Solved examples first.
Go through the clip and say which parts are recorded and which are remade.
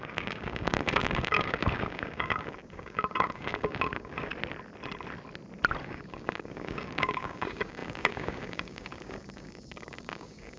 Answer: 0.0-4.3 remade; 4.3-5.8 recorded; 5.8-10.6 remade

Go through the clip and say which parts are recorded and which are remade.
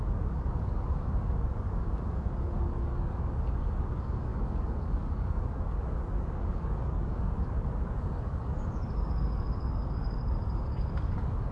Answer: 0.0-11.5 remade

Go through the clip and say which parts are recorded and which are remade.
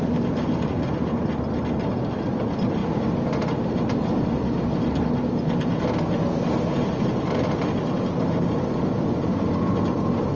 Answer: 0.0-10.4 recorded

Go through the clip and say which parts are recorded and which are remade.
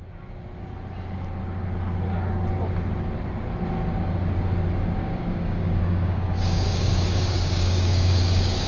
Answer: 0.0-5.0 recorded; 5.0-8.7 remade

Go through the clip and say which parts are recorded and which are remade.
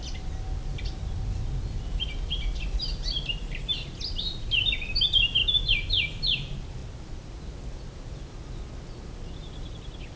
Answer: 0.0-10.2 recorded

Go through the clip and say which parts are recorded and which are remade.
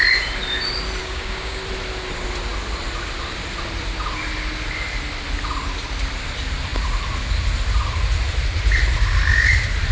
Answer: 0.0-1.0 recorded; 1.0-1.6 remade; 1.6-9.9 recorded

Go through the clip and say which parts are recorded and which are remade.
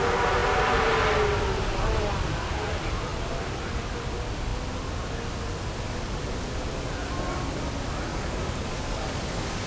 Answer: 0.0-8.1 recorded; 8.1-9.7 remade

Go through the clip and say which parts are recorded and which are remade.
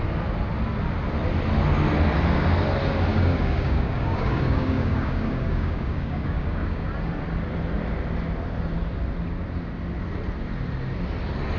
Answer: 0.0-3.1 recorded; 3.1-6.9 remade; 6.9-11.6 recorded